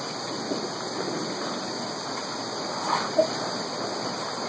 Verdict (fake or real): real